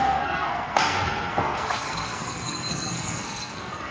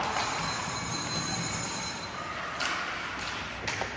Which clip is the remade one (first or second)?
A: first